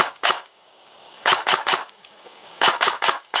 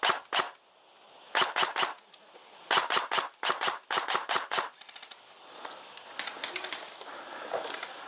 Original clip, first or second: second